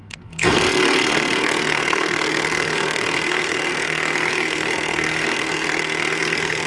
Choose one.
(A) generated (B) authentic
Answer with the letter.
A